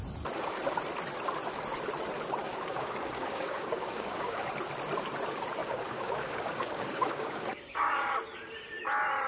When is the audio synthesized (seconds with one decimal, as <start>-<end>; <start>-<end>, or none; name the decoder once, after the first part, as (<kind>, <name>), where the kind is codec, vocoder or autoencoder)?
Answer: 2.4-4.5 (codec, DAC); 5.6-8.1